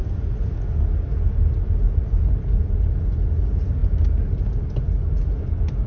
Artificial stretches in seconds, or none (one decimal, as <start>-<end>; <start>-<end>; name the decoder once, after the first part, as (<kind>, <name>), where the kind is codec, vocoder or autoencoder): none